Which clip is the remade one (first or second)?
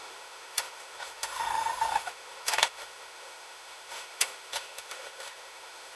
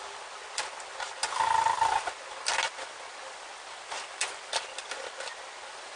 first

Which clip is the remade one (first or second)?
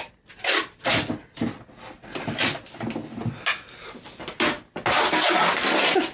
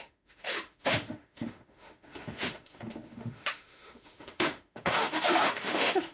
second